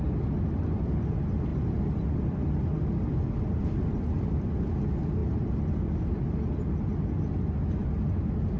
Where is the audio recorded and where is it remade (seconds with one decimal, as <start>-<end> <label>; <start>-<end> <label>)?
0.0-1.5 recorded; 1.5-4.7 remade; 4.7-5.2 recorded; 5.2-6.8 remade; 6.8-8.6 recorded